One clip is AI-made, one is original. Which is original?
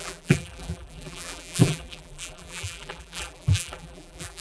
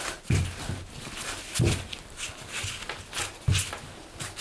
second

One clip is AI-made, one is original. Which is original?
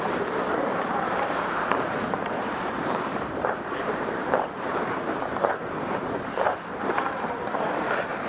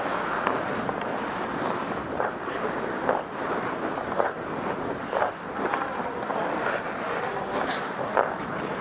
second